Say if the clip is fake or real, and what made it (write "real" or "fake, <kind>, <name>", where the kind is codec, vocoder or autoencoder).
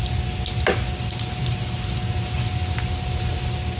real